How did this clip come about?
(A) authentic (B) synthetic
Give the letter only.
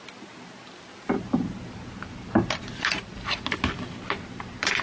A